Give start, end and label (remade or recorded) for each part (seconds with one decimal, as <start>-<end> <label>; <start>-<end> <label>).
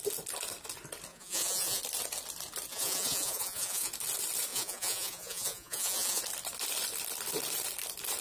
0.0-1.1 recorded; 1.1-1.8 remade; 1.8-2.7 recorded; 2.7-3.9 remade; 3.9-4.5 recorded; 4.5-6.2 remade; 6.2-8.2 recorded